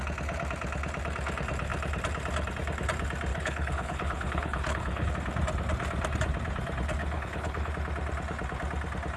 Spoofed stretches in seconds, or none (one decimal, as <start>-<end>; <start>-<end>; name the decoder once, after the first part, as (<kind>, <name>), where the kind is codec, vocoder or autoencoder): 3.3-5.1 (codec, HILCodec); 7.0-7.7